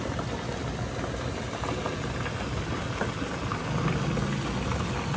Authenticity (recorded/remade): recorded